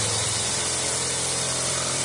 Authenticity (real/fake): fake